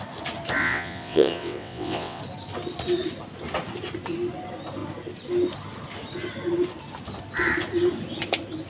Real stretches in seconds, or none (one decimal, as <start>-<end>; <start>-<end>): 0.0-0.6; 2.2-8.7